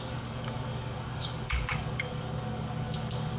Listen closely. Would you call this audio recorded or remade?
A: remade